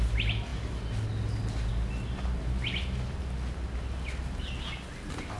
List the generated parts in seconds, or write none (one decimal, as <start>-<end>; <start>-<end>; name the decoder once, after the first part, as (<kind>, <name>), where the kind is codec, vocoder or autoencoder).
none

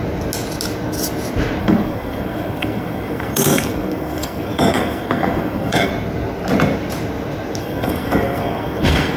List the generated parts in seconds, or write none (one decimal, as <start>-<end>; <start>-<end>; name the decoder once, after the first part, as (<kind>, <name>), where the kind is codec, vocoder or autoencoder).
1.6-5.9 (codec, SNAC); 7.6-9.2

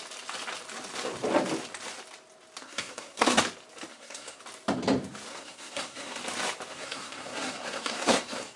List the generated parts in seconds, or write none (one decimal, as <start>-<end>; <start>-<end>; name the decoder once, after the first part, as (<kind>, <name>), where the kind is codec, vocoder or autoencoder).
2.6-3.4 (codec, SNAC); 3.9-4.4; 5.3-6.2; 6.7-8.6

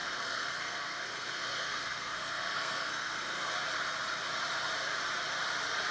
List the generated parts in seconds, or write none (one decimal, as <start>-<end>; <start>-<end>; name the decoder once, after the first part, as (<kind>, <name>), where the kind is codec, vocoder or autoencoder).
0.0-3.5 (codec, SNAC)

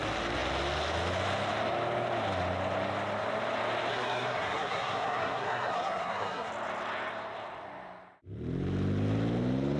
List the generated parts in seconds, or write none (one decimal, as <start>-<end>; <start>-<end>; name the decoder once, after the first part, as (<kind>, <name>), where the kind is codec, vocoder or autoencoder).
3.9-6.5 (codec, SNAC)

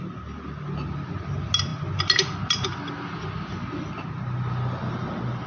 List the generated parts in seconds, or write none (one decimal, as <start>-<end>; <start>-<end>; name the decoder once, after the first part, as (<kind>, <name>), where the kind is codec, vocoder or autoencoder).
none

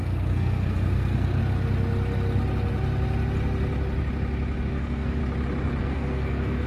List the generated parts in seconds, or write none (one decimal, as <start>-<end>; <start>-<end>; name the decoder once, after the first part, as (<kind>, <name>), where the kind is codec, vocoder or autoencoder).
0.0-1.4 (codec, SNAC); 4.7-5.2; 5.8-6.7